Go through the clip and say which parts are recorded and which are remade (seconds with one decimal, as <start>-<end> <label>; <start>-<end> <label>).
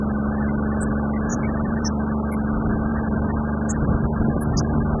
0.0-1.3 recorded; 1.3-1.9 remade; 1.9-5.0 recorded